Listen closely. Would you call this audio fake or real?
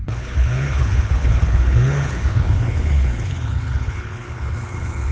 fake